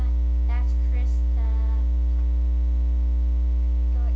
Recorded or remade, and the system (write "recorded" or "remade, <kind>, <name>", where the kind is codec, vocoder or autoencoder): recorded